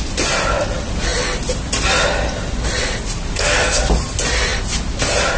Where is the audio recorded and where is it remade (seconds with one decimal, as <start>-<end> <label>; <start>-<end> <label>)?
0.0-3.3 recorded; 3.3-3.8 remade; 3.8-5.4 recorded